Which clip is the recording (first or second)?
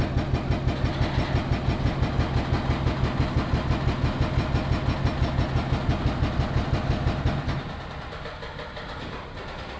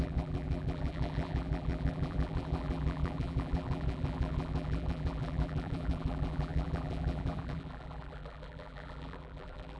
first